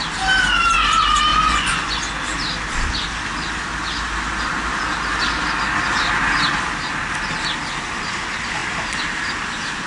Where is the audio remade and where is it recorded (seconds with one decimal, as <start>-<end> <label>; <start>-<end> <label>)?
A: 0.0-1.3 recorded; 1.3-2.0 remade; 2.0-9.9 recorded